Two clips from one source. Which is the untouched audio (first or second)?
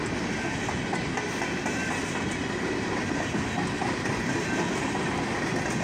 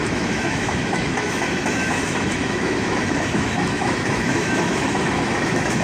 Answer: first